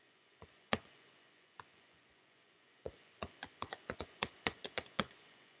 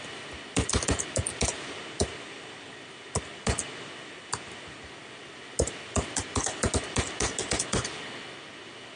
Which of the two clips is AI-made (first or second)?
first